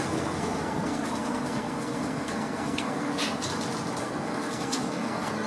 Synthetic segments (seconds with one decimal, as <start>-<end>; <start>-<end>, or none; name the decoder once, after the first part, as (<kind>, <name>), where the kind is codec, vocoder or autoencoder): 0.0-3.2 (codec, SNAC); 4.0-5.5